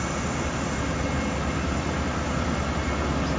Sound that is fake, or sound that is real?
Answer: real